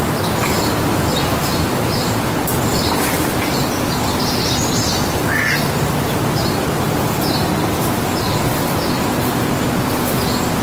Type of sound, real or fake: real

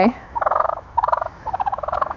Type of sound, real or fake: fake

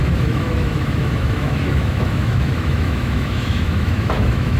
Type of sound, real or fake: fake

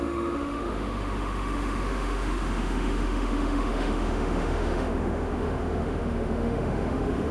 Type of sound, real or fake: fake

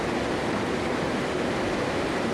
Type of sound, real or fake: real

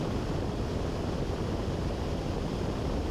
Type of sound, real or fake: real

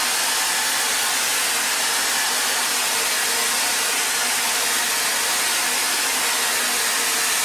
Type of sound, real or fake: real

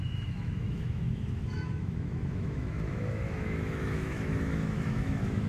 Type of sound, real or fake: fake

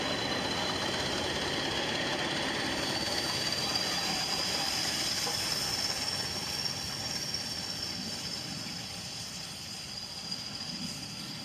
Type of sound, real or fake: real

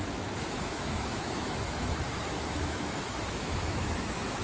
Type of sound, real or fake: fake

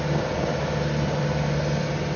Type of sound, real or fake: real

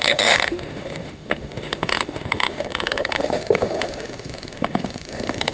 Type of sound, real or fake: fake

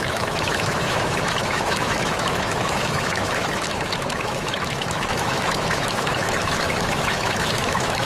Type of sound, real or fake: fake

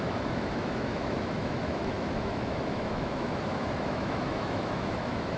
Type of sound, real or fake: fake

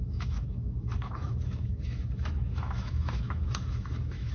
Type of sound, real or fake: fake